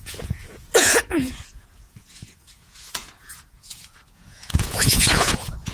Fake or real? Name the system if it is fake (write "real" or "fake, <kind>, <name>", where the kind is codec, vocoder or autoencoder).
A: fake, vocoder, Vocos